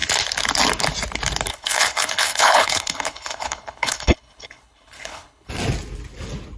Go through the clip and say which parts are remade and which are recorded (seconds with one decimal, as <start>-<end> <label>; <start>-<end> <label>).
0.0-1.5 recorded; 1.5-5.5 remade; 5.5-6.6 recorded